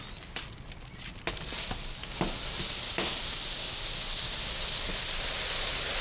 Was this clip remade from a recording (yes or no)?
no